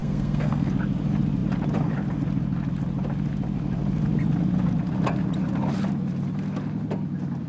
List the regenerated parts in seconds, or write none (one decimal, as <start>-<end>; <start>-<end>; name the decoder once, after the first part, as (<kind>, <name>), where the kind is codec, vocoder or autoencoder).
0.0-0.7 (codec, SNAC)